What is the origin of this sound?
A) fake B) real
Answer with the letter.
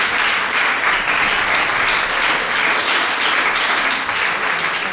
B